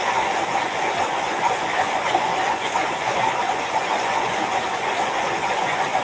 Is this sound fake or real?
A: fake